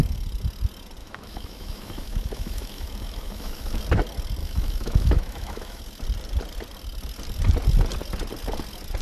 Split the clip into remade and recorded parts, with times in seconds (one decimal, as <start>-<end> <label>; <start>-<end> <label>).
0.0-1.0 recorded; 1.0-3.8 remade; 3.8-4.4 recorded; 4.4-5.8 remade; 5.8-9.0 recorded